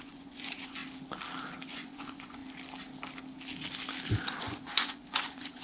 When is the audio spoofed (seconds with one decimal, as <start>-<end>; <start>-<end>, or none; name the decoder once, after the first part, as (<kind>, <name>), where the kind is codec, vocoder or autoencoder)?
0.0-0.8 (vocoder, Vocos); 1.7-2.4; 4.4-5.6

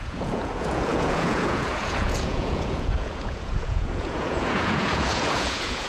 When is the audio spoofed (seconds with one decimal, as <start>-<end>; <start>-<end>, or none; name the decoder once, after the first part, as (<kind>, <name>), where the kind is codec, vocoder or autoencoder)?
0.0-5.9 (vocoder, Vocos)

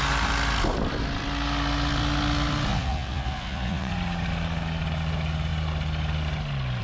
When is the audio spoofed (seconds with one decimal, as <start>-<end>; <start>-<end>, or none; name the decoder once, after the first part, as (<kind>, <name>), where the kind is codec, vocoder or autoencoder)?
2.7-3.9 (vocoder, Vocos)

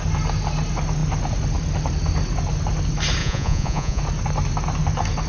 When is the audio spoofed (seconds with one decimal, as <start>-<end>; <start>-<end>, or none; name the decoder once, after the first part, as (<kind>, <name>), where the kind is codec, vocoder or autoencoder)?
3.2-4.0 (vocoder, Vocos)